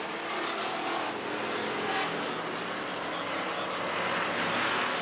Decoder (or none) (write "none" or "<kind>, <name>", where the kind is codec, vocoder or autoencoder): none